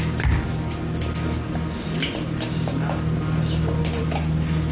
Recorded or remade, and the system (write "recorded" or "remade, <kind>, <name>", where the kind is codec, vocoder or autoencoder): recorded